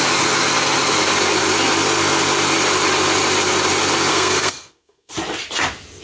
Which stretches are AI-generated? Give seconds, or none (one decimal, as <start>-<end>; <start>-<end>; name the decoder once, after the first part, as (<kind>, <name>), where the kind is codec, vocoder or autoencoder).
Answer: 4.1-5.1 (codec, SNAC)